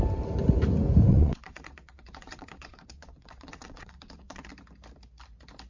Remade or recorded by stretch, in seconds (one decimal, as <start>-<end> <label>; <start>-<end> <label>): 0.0-1.1 recorded; 1.1-4.5 remade; 4.5-5.7 recorded